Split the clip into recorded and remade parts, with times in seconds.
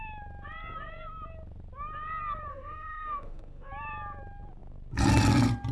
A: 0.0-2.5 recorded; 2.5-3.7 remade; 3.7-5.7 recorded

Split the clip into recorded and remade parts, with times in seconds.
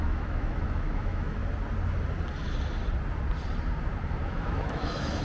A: 0.0-1.4 remade; 1.4-4.3 recorded; 4.3-5.2 remade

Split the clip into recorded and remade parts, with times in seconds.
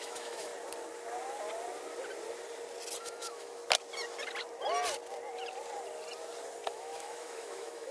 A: 0.0-0.5 remade; 0.5-3.0 recorded; 3.0-3.6 remade; 3.6-6.7 recorded; 6.7-7.9 remade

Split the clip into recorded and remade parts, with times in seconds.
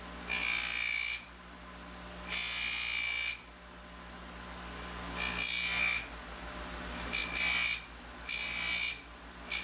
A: 0.0-9.6 recorded